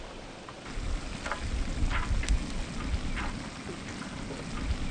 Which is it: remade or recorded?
recorded